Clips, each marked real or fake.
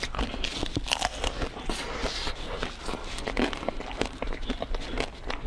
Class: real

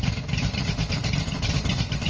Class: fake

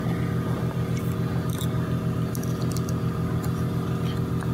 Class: real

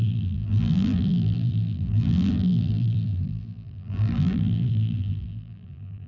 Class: fake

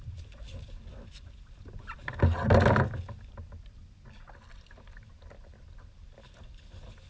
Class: real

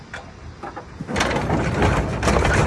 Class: real